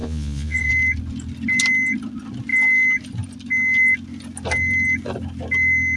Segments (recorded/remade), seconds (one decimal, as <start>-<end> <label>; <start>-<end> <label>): 0.0-0.7 remade; 0.7-6.0 recorded